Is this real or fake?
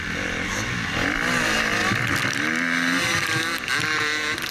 real